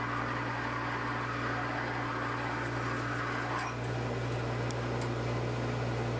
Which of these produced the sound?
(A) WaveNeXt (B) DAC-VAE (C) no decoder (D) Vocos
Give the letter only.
C